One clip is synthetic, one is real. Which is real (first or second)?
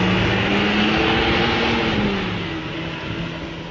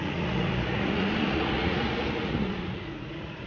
first